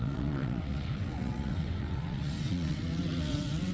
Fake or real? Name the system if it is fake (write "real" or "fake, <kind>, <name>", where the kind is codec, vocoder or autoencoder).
fake, vocoder, WaveNeXt